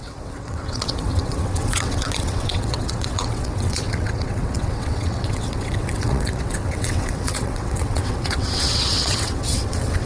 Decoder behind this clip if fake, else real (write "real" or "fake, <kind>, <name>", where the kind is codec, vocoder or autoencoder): fake, vocoder, WaveNeXt